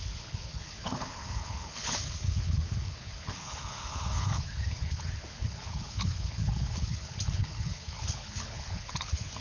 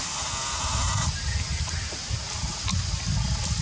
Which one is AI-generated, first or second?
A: first